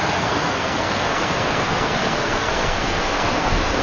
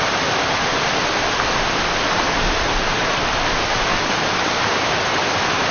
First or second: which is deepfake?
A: first